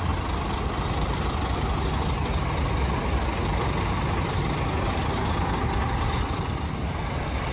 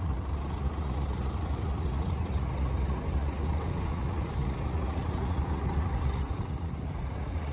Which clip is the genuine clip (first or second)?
first